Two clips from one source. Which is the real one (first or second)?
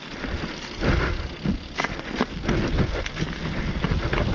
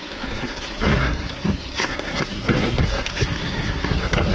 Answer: first